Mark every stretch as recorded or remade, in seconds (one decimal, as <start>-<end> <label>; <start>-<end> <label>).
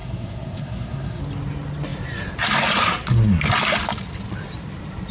0.0-1.2 remade; 1.2-5.1 recorded